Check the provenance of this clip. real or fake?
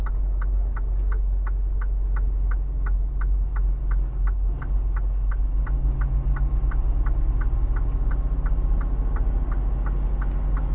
real